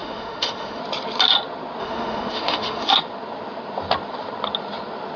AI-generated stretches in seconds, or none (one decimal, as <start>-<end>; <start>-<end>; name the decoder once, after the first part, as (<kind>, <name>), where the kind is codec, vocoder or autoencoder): 0.0-0.8 (autoencoder, DAC-VAE); 1.8-2.9